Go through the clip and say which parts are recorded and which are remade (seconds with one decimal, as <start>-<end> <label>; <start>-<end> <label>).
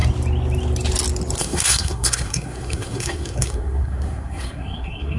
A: 0.0-1.4 recorded; 1.4-5.2 remade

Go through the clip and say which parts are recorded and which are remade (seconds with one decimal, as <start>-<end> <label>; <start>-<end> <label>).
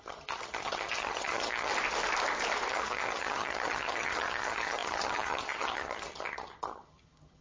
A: 0.0-1.7 remade; 1.7-2.7 recorded; 2.7-7.4 remade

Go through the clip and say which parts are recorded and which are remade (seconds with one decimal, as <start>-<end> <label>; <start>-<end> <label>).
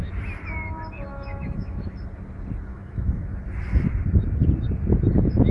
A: 0.0-1.1 recorded; 1.1-1.9 remade; 1.9-2.7 recorded; 2.7-3.4 remade; 3.4-5.5 recorded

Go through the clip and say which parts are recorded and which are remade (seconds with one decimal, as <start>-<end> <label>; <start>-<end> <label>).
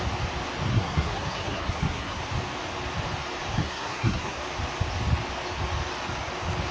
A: 0.0-0.7 recorded; 0.7-2.2 remade; 2.2-3.5 recorded; 3.5-4.4 remade; 4.4-6.7 recorded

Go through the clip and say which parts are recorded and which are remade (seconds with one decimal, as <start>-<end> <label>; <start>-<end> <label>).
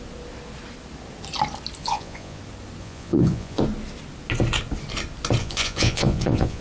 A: 0.0-1.8 recorded; 1.8-2.4 remade; 2.4-2.8 recorded; 2.8-3.6 remade; 3.6-5.4 recorded; 5.4-6.6 remade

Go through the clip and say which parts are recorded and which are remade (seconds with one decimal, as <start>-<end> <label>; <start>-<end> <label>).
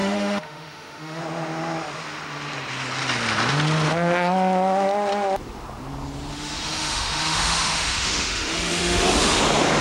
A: 0.0-1.2 remade; 1.2-6.3 recorded; 6.3-9.4 remade; 9.4-9.8 recorded